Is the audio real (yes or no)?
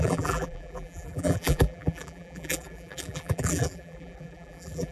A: no